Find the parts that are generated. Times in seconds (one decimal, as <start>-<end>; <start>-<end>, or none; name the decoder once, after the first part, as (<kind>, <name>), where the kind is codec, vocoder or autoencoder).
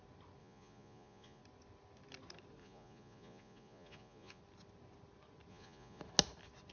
0.4-1.4 (vocoder, Vocos); 2.6-4.4; 5.5-6.0